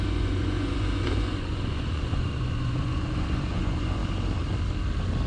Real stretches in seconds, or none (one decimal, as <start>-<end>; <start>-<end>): 4.0-5.3